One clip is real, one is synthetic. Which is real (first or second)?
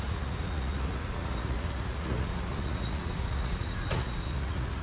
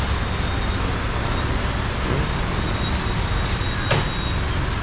second